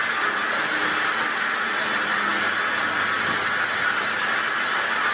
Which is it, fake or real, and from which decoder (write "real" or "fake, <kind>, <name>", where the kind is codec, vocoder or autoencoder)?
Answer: real